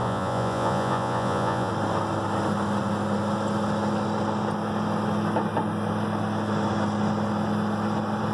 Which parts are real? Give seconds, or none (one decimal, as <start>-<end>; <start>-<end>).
1.7-8.3

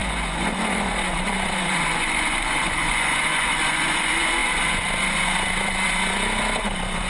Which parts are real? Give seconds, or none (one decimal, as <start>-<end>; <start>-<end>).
none

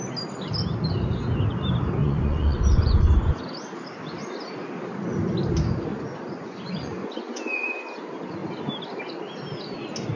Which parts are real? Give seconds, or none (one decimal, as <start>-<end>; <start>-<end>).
0.0-2.0; 3.4-5.9; 8.0-10.2